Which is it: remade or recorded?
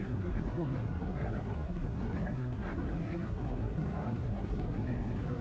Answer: remade